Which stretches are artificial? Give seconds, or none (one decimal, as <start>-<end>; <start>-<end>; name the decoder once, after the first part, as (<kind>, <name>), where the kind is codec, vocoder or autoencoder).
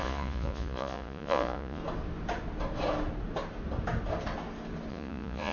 0.0-1.8 (vocoder, Vocos); 4.9-5.5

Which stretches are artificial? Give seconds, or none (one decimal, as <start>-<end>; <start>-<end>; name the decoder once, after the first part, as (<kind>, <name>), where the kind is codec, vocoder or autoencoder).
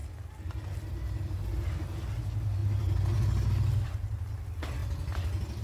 none